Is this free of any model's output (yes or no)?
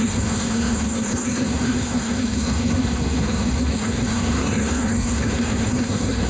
no